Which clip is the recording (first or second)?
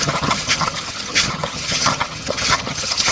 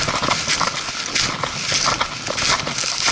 second